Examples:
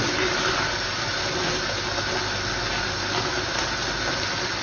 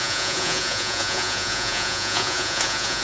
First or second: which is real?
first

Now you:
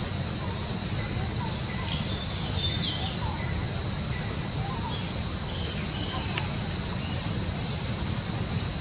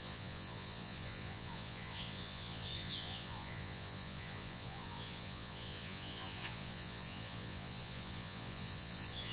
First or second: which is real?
first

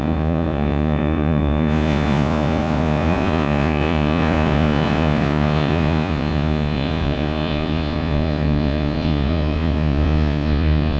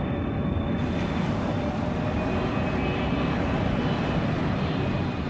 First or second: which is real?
second